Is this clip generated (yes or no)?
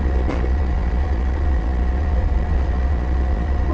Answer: yes